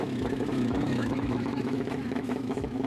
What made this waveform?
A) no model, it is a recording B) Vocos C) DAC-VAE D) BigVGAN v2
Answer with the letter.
C